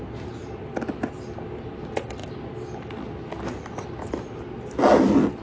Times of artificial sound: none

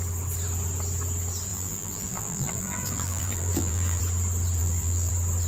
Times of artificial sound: 1.5-4.0 (vocoder, BigVGAN v2); 4.6-5.1

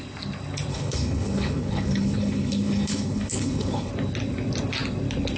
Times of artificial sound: 0.7-3.9 (codec, HILCodec)

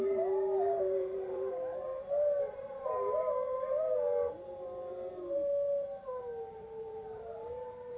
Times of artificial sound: 0.0-1.9 (vocoder, BigVGAN v2); 2.4-3.4; 6.5-8.0

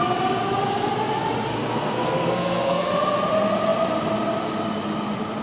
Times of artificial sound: 1.5-2.9 (codec, SNAC)